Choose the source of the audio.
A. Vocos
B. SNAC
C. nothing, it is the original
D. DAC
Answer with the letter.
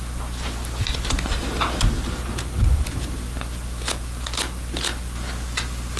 C